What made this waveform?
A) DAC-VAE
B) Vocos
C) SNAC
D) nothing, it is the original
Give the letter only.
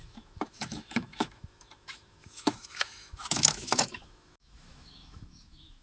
A